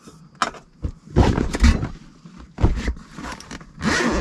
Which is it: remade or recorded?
recorded